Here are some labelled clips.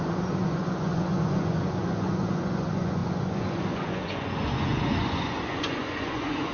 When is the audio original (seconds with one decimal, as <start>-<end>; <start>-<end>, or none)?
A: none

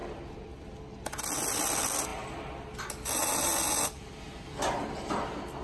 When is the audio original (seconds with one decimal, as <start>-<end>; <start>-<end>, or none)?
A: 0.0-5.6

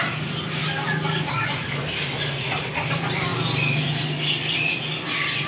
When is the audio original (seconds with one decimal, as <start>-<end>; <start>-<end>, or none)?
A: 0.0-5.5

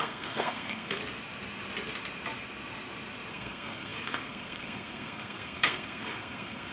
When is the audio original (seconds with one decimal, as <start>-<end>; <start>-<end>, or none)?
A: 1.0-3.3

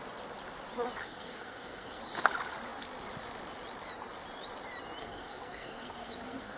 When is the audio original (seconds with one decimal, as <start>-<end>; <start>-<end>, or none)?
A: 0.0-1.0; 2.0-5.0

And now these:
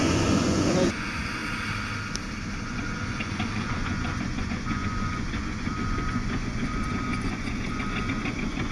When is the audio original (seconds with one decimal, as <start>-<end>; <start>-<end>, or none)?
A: 1.4-2.6